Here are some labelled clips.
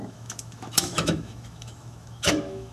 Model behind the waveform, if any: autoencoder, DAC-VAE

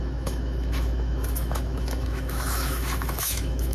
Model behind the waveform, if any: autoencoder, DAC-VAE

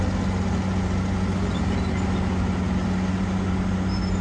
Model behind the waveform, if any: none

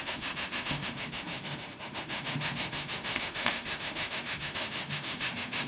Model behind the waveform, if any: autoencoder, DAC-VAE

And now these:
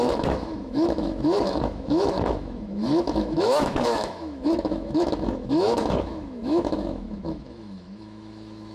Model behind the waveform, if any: autoencoder, DAC-VAE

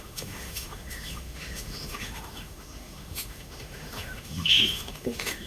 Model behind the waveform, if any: autoencoder, DAC-VAE